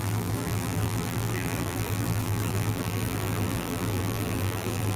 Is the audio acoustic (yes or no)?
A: no